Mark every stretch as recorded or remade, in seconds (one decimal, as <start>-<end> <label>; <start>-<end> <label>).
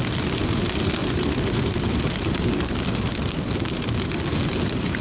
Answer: 0.0-1.0 recorded; 1.0-3.1 remade; 3.1-5.0 recorded